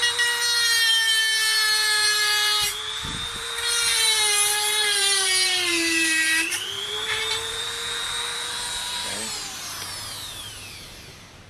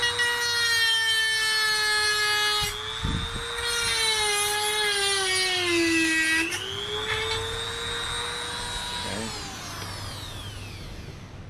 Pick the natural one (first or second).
second